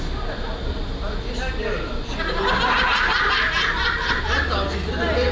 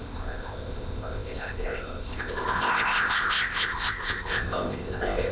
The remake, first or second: second